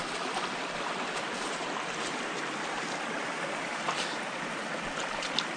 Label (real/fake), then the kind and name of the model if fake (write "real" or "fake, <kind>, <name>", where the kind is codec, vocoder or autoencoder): real